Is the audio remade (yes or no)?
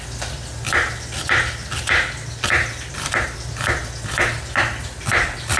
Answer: no